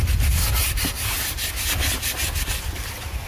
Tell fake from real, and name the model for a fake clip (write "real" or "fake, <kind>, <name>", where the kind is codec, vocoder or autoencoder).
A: real